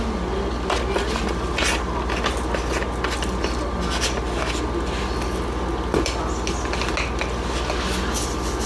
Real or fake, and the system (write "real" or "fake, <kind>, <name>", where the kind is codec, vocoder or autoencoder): real